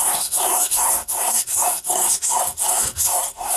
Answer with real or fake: fake